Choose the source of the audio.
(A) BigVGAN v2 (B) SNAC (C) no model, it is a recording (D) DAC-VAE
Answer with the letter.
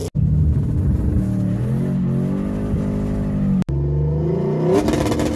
C